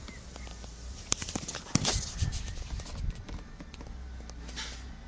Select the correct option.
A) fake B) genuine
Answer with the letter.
B